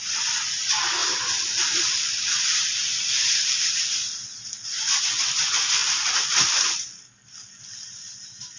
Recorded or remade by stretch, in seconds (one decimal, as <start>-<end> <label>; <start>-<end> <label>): 0.0-1.0 recorded; 1.0-5.0 remade; 5.0-8.6 recorded